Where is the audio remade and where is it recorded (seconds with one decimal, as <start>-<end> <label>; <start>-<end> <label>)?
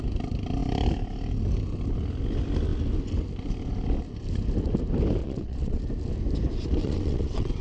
0.0-5.2 recorded; 5.2-5.8 remade; 5.8-6.8 recorded; 6.8-7.6 remade